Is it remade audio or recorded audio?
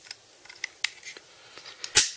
recorded